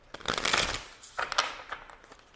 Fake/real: real